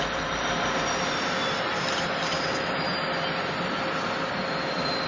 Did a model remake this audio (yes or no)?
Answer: no